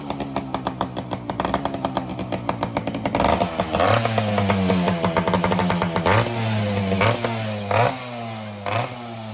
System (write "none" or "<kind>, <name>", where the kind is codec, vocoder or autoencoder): none